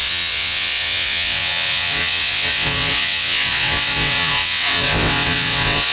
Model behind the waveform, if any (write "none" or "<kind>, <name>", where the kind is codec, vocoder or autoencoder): vocoder, WaveNeXt